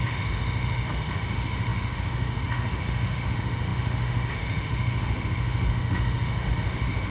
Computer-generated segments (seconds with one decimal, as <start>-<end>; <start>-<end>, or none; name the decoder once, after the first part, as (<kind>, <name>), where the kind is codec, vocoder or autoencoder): 0.0-7.1 (autoencoder, DAC-VAE)